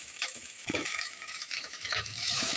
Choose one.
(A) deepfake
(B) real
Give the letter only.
A